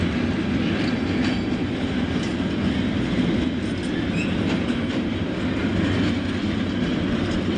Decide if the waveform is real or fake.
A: real